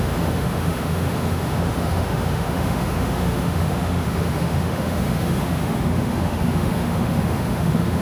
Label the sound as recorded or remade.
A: remade